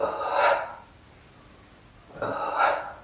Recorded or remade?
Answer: recorded